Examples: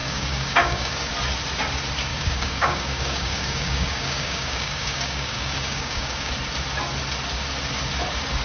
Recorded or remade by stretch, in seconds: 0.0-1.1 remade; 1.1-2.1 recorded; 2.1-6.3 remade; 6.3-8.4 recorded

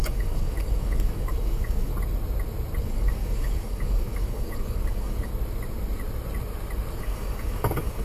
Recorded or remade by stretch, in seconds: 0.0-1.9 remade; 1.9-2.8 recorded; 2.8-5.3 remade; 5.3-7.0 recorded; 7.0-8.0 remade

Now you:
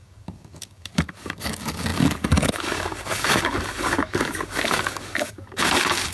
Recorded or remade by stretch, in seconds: 0.0-6.1 remade